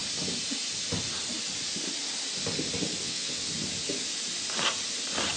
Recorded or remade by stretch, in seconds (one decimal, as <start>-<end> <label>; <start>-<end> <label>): 0.0-3.0 recorded; 3.0-3.5 remade; 3.5-5.4 recorded